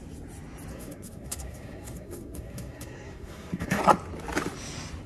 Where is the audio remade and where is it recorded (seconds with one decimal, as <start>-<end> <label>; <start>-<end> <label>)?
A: 0.0-0.7 recorded; 0.7-3.8 remade; 3.8-5.1 recorded